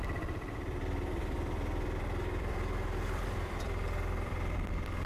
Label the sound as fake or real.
fake